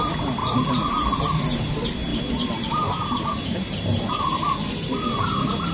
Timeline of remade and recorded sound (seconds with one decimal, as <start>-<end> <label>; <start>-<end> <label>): 0.0-5.7 recorded